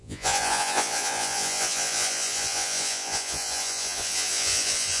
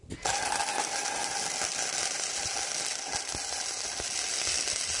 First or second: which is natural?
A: second